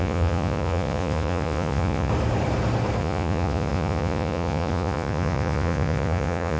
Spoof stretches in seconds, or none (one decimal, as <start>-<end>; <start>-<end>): 0.0-2.1; 3.0-6.6